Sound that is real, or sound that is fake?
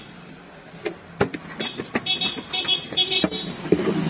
real